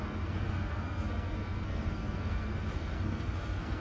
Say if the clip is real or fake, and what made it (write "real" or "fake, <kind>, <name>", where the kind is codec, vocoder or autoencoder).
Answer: fake, codec, SNAC